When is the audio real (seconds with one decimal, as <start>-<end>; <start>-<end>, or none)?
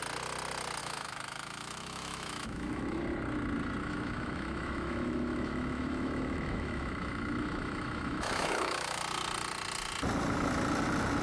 0.0-0.8; 3.0-3.8; 9.0-11.2